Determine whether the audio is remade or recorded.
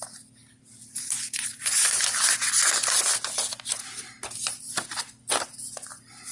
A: recorded